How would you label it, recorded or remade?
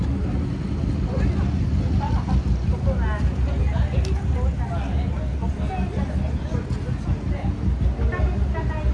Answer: recorded